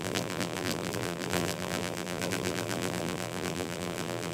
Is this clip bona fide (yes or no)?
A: no